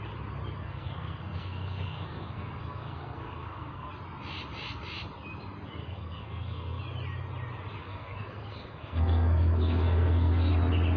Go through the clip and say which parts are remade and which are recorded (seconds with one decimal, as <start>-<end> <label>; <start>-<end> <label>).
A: 0.0-0.6 recorded; 0.6-3.9 remade; 3.9-5.8 recorded; 5.8-6.8 remade; 6.8-7.8 recorded; 7.8-10.5 remade; 10.5-11.0 recorded